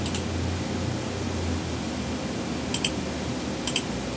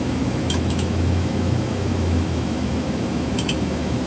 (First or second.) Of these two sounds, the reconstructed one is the second